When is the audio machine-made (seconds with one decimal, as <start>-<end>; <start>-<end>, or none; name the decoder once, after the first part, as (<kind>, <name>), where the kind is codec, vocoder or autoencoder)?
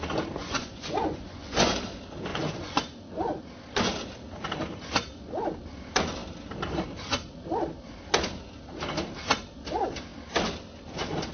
0.4-1.7 (vocoder, Vocos); 2.3-3.4